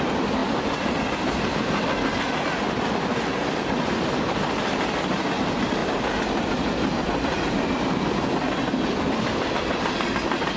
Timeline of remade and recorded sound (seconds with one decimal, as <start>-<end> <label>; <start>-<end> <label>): 0.0-10.6 recorded